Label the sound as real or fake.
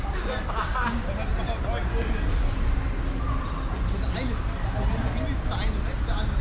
real